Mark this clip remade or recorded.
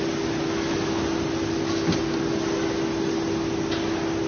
recorded